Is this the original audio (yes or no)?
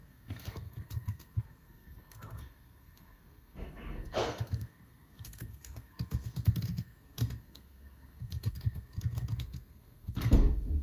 no